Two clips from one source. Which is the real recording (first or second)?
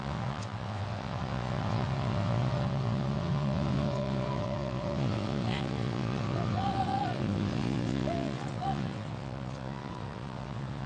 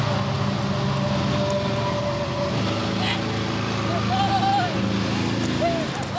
second